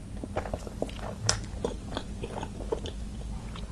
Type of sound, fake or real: real